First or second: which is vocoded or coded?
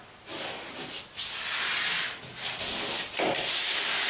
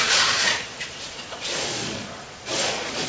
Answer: second